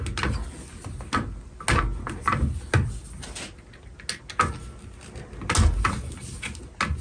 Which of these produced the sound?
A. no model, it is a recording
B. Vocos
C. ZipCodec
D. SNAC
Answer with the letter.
A